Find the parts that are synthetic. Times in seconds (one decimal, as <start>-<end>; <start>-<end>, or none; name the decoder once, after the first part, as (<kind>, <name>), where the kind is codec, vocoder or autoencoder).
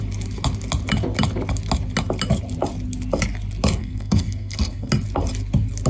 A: 3.8-4.9 (codec, SNAC)